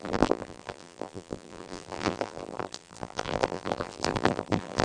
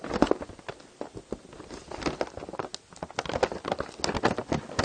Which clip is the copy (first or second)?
first